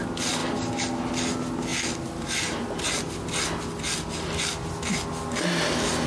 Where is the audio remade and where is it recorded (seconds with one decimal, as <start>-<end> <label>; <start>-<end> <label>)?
0.0-6.1 recorded